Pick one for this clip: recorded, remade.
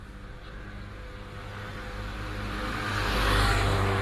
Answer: recorded